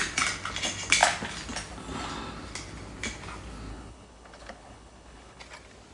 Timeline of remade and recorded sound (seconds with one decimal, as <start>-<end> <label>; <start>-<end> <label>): 0.0-3.7 recorded; 3.7-5.4 remade; 5.4-5.9 recorded

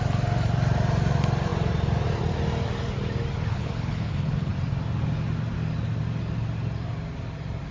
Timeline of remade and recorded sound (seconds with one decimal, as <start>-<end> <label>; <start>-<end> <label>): 0.0-3.5 recorded; 3.5-4.5 remade; 4.5-7.7 recorded

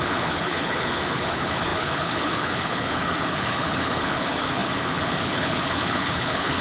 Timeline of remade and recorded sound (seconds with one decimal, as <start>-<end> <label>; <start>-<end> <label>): 0.0-6.6 remade